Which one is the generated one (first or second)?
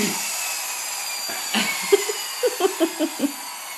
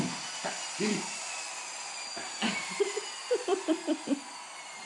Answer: second